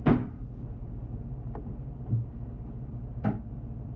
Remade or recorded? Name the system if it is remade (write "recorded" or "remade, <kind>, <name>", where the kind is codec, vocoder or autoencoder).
remade, vocoder, BigVGAN v2